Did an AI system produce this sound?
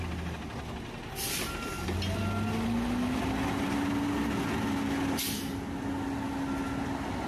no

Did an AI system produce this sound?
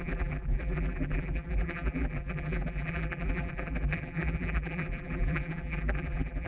yes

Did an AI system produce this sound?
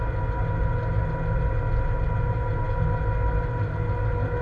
no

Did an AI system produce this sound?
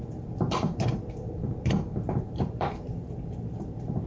yes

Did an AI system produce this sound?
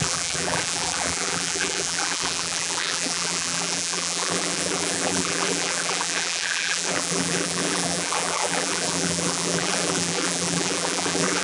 yes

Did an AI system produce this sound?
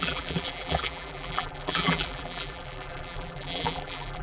yes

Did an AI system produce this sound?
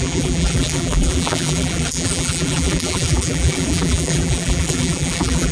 yes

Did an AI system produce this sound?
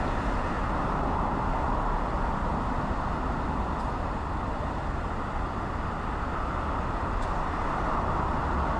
no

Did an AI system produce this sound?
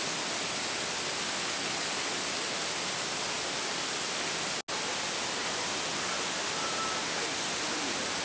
no